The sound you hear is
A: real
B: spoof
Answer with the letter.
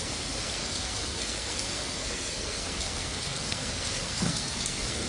B